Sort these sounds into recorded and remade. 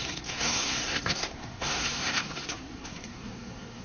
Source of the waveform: remade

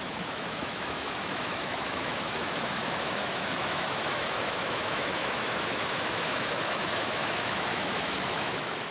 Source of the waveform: remade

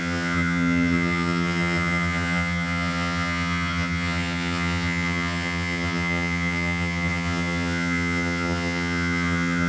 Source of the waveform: remade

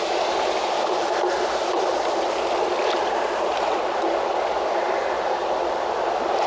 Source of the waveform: remade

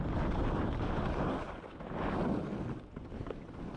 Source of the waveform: recorded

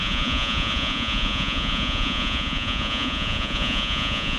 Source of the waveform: remade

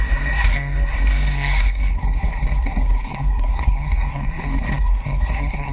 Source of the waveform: remade